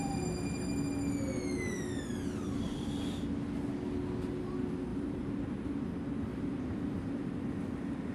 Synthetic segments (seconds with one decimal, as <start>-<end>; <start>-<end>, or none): 4.9-5.7; 6.3-7.5